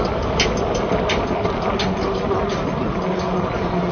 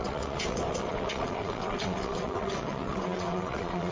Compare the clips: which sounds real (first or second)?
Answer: first